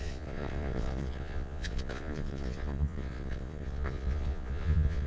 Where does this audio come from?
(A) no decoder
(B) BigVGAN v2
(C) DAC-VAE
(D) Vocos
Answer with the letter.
D